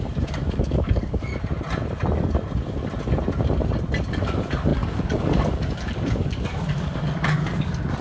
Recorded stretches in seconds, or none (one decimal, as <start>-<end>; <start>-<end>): 1.3-4.1

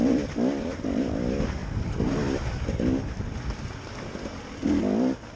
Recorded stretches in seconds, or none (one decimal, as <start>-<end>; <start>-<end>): 0.0-1.6; 4.8-5.4

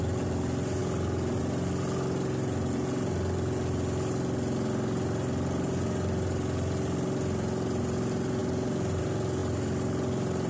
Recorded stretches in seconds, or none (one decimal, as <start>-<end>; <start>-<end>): 0.0-10.5

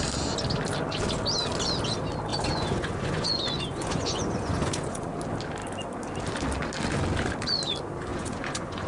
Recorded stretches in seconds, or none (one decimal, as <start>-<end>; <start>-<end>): 0.0-2.3; 5.1-8.1

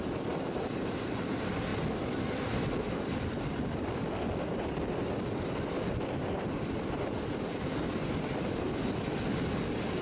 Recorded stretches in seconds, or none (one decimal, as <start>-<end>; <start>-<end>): 0.0-10.0

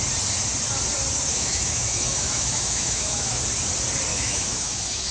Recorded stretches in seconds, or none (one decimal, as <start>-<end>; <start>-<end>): 0.0-1.3; 3.4-4.1

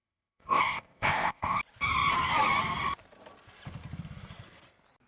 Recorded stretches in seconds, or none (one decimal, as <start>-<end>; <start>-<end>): 1.6-5.1

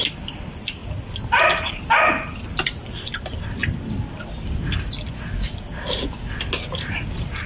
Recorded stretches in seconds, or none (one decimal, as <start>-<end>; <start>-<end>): 0.0-7.5